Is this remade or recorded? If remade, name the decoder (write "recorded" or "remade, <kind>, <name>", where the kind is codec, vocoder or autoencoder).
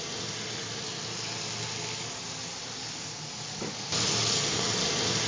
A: recorded